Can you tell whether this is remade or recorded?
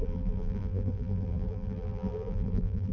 remade